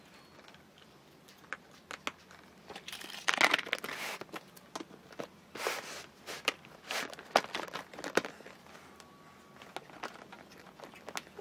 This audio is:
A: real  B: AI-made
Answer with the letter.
A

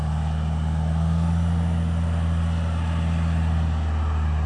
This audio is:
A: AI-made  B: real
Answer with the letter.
B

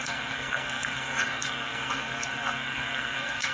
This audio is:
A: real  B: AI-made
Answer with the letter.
B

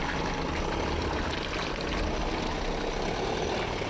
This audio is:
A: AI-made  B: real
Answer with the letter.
B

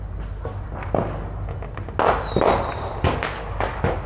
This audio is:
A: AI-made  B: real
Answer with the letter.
B